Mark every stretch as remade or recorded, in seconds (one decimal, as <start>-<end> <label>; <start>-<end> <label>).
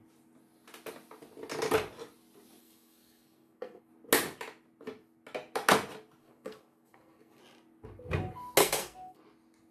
0.0-2.6 recorded; 2.6-3.9 remade; 3.9-6.2 recorded; 6.2-7.4 remade; 7.4-8.6 recorded; 8.6-9.2 remade; 9.2-9.7 recorded